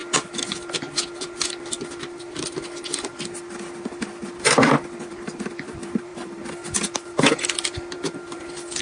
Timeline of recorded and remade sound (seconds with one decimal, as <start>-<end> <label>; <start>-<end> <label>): 0.0-5.0 recorded; 5.0-8.8 remade